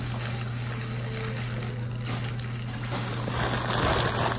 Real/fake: real